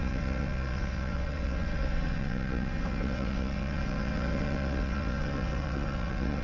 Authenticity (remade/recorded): remade